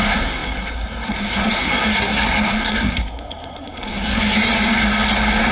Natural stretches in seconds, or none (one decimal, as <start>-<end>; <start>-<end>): 4.5-5.5